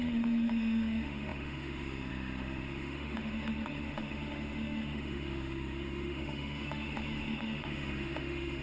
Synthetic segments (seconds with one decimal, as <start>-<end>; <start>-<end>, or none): 0.0-8.6